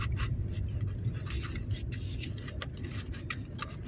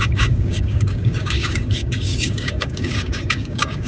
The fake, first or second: second